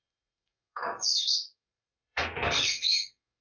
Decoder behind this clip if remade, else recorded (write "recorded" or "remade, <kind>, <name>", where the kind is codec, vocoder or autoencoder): remade, codec, SNAC